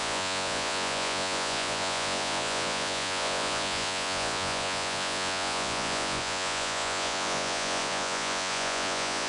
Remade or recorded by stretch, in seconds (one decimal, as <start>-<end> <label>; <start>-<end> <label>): 0.0-9.3 remade